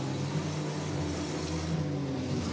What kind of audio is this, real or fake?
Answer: real